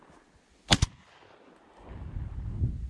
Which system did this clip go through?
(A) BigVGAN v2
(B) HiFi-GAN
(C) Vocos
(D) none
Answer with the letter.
D